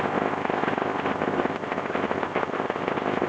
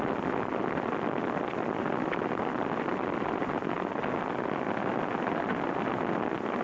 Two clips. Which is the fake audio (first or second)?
first